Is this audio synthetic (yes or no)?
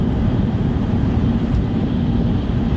yes